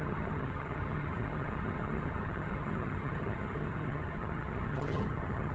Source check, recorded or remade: remade